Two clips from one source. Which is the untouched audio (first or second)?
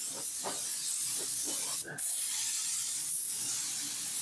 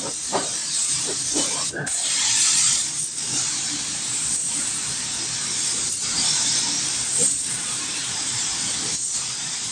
first